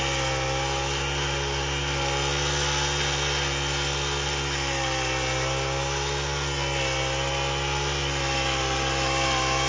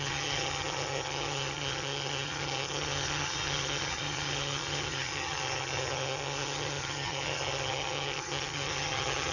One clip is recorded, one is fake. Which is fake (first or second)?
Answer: second